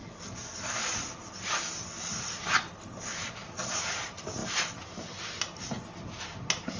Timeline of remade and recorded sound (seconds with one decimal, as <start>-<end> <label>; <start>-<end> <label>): 0.0-1.0 remade; 1.0-3.4 recorded; 3.4-4.0 remade; 4.0-6.8 recorded